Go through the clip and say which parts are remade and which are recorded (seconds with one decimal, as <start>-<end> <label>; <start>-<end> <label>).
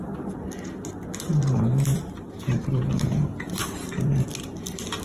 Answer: 0.0-1.3 recorded; 1.3-4.3 remade; 4.3-5.0 recorded